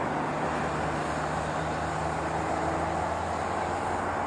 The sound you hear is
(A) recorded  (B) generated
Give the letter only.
A